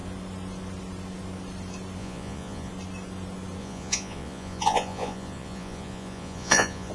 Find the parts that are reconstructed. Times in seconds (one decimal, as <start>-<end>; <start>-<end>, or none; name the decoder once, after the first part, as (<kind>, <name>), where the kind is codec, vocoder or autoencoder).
2.0-2.7 (vocoder, Vocos); 3.6-6.9